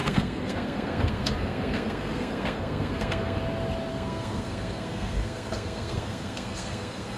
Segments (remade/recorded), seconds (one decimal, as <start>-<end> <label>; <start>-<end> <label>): 0.0-3.4 remade; 3.4-3.9 recorded; 3.9-7.2 remade

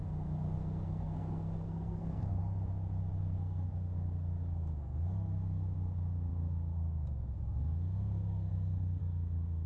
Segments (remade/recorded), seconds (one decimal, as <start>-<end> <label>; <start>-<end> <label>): 0.0-2.4 remade; 2.4-3.2 recorded; 3.2-9.7 remade

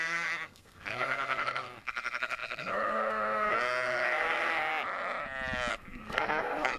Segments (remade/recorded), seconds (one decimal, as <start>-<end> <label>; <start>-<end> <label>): 0.0-4.7 remade; 4.7-5.7 recorded; 5.7-6.8 remade

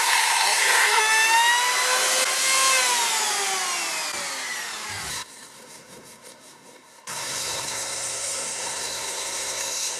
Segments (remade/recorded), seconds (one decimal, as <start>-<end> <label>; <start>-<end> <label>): 0.0-1.0 remade; 1.0-5.1 recorded; 5.1-10.0 remade

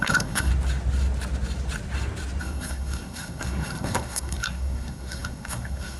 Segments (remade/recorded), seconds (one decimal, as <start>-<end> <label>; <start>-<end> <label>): 0.0-0.5 remade; 0.5-2.4 recorded; 2.4-6.0 remade

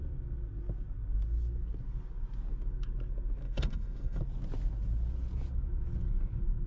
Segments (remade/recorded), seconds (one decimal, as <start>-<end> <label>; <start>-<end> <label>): 0.0-3.4 recorded; 3.4-4.2 remade; 4.2-6.7 recorded

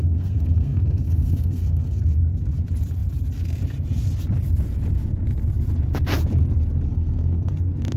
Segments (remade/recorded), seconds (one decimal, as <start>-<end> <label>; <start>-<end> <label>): 0.0-2.0 remade; 2.0-6.9 recorded; 6.9-7.5 remade; 7.5-8.0 recorded